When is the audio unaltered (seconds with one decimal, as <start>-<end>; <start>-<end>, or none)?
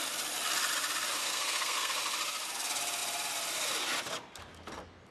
0.0-1.2; 1.9-5.1